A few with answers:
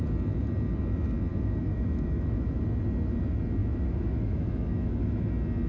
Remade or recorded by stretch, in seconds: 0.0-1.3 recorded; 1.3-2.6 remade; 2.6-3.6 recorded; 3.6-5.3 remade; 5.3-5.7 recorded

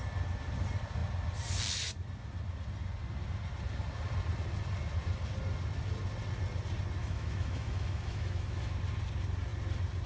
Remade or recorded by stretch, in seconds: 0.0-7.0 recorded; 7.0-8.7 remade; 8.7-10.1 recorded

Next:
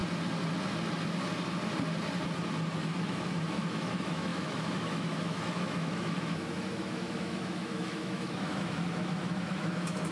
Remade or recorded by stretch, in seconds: 0.0-2.8 recorded; 2.8-10.1 remade

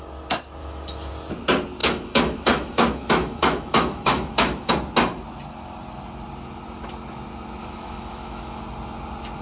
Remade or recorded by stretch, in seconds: 0.0-0.6 recorded; 0.6-1.1 remade; 1.1-1.8 recorded; 1.8-4.7 remade; 4.7-7.6 recorded; 7.6-8.6 remade; 8.6-9.4 recorded

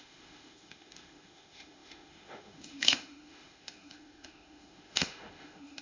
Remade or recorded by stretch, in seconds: 0.0-5.8 remade